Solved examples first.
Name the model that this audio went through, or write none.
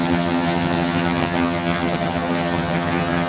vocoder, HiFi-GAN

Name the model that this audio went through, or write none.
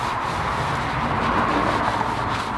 none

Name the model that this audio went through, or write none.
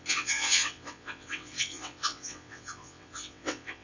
vocoder, WaveNeXt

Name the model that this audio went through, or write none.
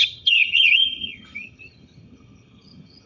vocoder, HiFi-GAN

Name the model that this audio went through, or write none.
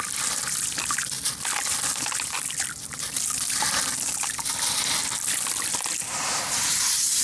none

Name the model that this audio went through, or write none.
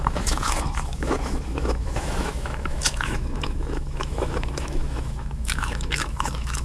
autoencoder, DAC-VAE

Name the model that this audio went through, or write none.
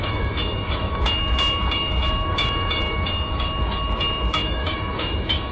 autoencoder, DAC-VAE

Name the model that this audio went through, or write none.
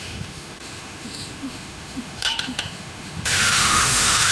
autoencoder, DAC-VAE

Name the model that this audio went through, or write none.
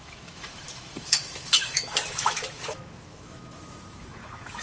autoencoder, DAC-VAE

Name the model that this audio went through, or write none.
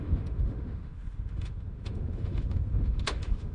autoencoder, DAC-VAE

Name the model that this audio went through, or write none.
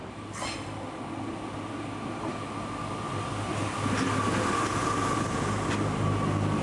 none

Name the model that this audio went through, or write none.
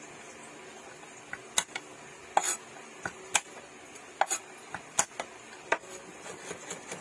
none